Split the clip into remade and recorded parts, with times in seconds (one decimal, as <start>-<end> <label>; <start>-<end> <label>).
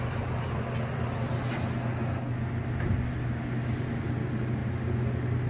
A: 0.0-5.5 recorded